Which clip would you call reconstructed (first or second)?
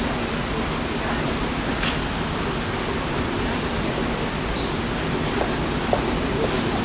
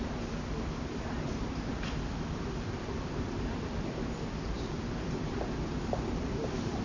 second